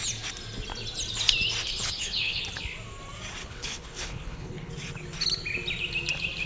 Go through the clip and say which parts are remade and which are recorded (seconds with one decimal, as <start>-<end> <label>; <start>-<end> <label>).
0.0-1.6 recorded; 1.6-2.4 remade; 2.4-3.4 recorded; 3.4-4.7 remade; 4.7-6.5 recorded